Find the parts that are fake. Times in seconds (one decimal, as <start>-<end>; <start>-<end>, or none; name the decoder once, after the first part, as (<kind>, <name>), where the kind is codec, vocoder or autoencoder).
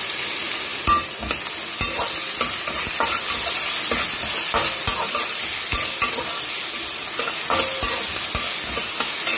none